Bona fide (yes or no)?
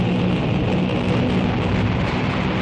yes